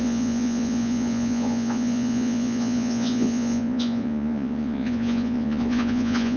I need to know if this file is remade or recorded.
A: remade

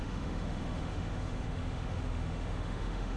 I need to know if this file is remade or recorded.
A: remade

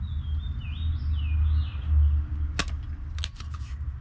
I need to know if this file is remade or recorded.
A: recorded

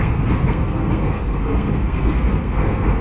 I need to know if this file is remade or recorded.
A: remade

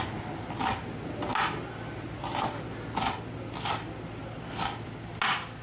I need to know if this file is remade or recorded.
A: recorded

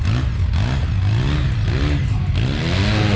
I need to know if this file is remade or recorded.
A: recorded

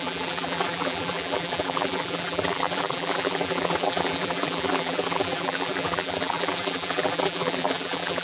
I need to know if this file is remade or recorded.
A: remade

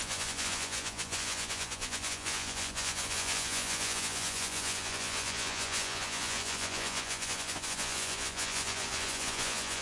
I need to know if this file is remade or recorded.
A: remade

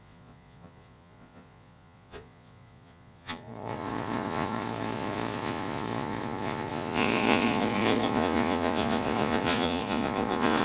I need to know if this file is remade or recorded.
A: remade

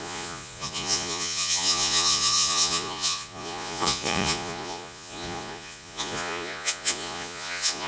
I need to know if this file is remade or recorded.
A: remade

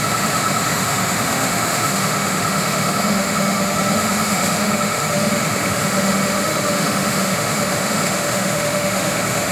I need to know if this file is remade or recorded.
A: remade